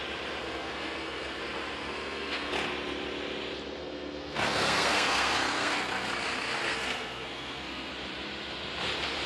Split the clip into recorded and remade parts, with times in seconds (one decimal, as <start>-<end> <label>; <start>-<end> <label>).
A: 0.0-0.4 recorded; 0.4-1.4 remade; 1.4-1.8 recorded; 1.8-2.5 remade; 2.5-3.8 recorded; 3.8-6.1 remade; 6.1-6.6 recorded; 6.6-7.9 remade; 7.9-9.3 recorded